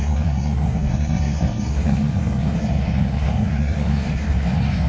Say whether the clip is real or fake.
fake